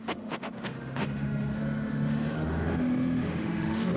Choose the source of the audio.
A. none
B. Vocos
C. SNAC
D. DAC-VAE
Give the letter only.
D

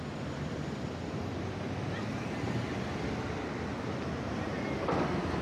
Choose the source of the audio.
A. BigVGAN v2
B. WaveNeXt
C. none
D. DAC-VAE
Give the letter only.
C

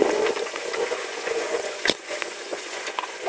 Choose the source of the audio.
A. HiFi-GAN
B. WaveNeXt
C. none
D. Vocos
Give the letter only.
D